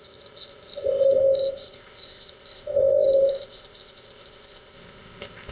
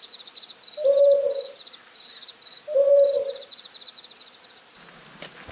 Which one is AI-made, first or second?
first